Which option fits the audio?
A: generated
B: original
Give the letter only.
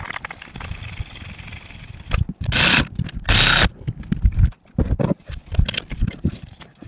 B